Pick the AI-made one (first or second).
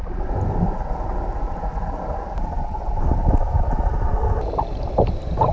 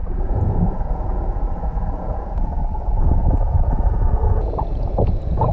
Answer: second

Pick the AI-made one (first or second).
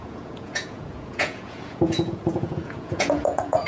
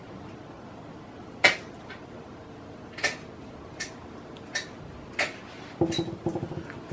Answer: first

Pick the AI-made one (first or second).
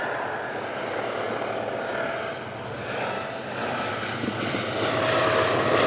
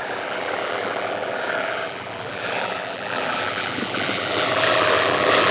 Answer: second